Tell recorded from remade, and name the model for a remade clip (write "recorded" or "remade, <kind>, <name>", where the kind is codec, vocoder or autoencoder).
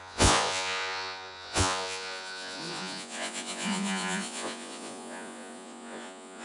remade, vocoder, Vocos